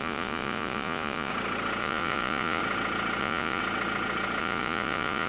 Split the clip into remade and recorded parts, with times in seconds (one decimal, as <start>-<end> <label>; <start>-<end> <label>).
0.0-1.3 remade; 1.3-1.8 recorded; 1.8-2.6 remade; 2.6-3.2 recorded; 3.2-3.6 remade; 3.6-4.4 recorded; 4.4-5.3 remade